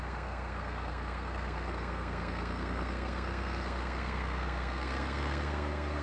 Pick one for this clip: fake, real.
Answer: fake